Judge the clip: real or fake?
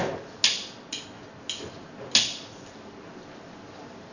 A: real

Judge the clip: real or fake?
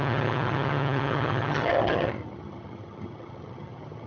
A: fake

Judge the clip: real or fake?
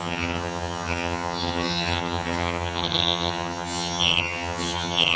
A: fake